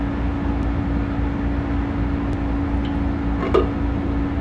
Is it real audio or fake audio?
real